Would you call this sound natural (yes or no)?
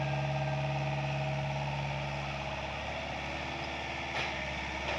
yes